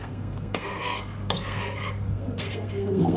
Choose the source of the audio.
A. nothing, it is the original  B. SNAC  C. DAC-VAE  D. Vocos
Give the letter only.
B